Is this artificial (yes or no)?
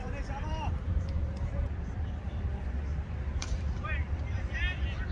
yes